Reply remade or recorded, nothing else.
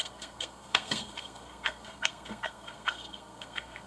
remade